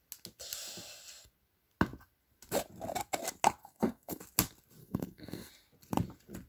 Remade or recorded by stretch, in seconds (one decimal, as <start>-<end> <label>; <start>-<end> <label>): 0.0-3.6 recorded; 3.6-4.2 remade; 4.2-4.8 recorded; 4.8-5.5 remade; 5.5-6.5 recorded